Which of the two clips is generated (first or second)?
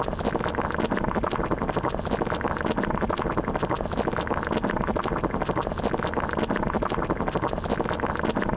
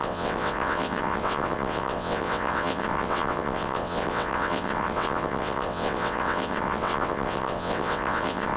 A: second